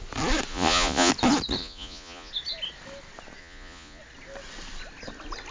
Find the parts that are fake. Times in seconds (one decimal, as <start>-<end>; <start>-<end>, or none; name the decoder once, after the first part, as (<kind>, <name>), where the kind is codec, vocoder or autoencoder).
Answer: 0.5-1.1 (vocoder, Vocos); 1.6-2.3; 3.4-4.0